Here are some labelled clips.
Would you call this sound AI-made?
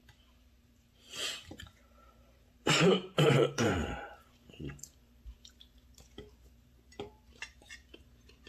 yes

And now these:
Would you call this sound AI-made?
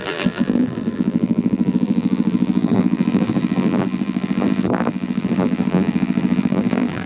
yes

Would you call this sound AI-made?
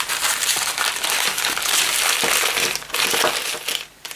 no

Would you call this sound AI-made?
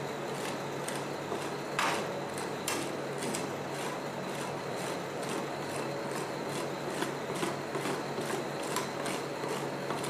no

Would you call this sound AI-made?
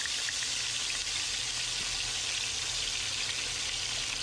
no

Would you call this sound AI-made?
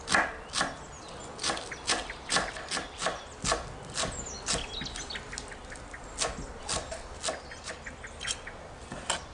no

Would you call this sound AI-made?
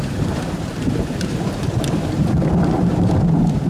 yes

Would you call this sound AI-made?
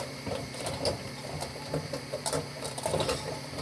yes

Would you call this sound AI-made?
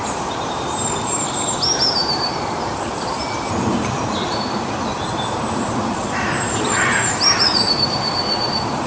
yes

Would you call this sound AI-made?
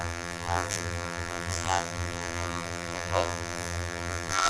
yes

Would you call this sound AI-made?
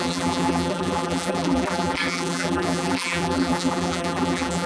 yes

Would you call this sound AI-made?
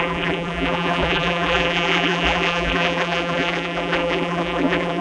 yes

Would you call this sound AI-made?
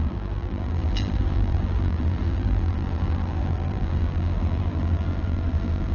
yes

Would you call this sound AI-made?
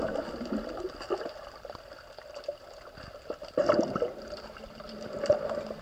no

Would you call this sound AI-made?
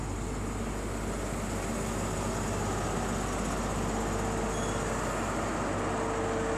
no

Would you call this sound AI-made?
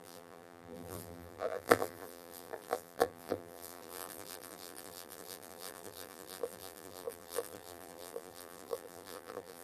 yes